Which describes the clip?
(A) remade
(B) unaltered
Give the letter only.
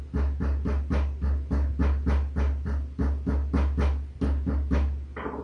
B